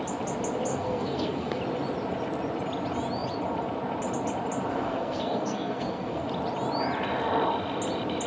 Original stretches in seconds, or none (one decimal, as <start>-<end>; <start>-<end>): 0.0-0.7; 1.6-4.7; 6.3-8.3